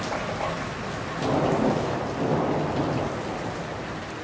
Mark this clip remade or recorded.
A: recorded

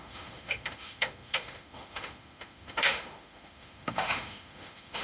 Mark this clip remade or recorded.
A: remade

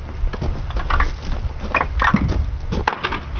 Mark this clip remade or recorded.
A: recorded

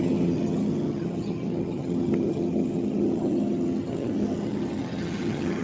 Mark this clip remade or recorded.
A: remade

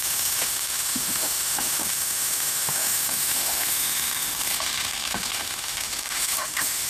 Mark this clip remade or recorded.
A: remade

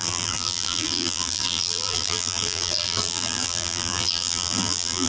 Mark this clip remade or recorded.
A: remade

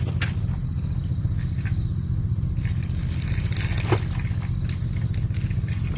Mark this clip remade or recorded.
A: recorded